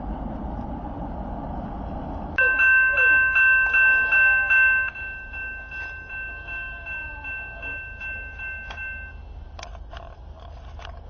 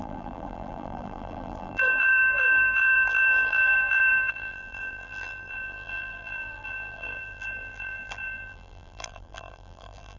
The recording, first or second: first